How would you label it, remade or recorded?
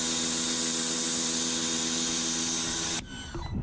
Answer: recorded